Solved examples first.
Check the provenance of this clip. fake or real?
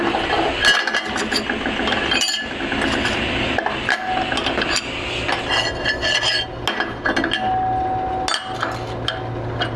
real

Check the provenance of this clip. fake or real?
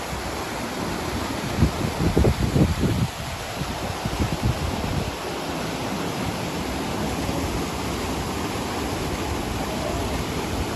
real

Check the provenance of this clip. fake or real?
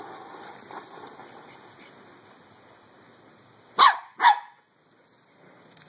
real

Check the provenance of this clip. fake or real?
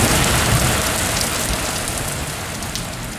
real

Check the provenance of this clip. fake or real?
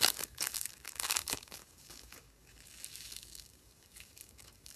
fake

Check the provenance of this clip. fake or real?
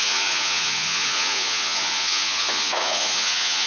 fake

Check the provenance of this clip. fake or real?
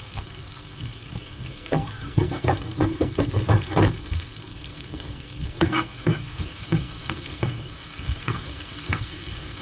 fake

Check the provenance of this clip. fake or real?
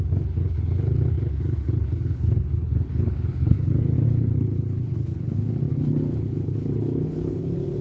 fake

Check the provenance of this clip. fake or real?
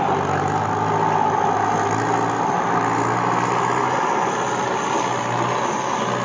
real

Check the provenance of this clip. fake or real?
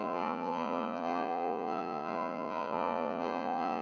fake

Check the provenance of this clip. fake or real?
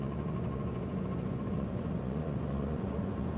fake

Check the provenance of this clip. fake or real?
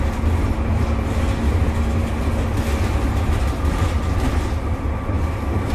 real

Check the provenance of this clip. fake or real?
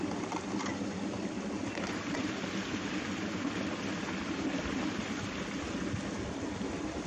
real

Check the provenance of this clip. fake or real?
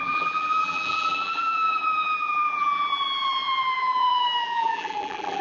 fake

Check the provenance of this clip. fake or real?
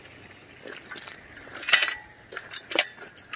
real